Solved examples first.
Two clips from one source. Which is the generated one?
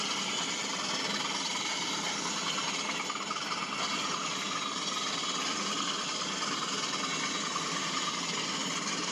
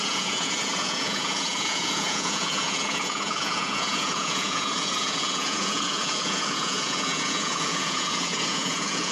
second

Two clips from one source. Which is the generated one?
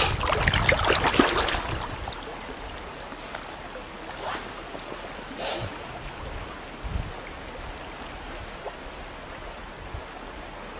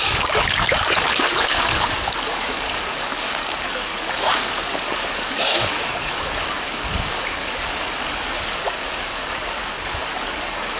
second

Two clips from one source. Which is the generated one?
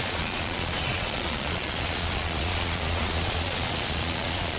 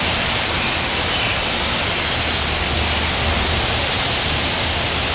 first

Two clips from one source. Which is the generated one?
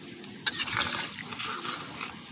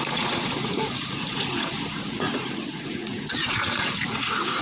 second